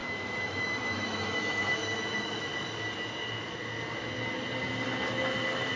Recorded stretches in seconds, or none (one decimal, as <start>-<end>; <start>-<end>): 2.5-5.8